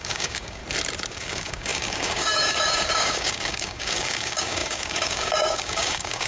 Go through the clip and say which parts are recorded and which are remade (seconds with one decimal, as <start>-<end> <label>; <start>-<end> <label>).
0.0-0.6 remade; 0.6-1.1 recorded; 1.1-6.3 remade